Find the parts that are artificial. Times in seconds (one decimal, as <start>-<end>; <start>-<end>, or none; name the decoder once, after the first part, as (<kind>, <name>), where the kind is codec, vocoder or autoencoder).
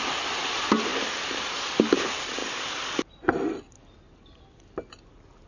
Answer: none